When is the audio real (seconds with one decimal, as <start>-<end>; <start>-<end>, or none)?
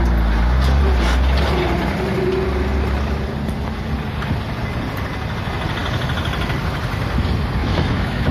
0.0-7.6